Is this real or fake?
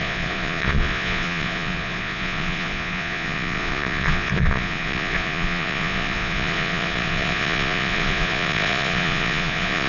fake